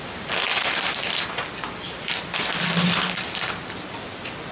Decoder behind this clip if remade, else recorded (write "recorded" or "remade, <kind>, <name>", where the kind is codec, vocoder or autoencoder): recorded